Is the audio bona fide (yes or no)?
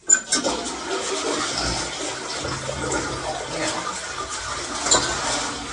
yes